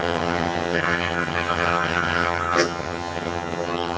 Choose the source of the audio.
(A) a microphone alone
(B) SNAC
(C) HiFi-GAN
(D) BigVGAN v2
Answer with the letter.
C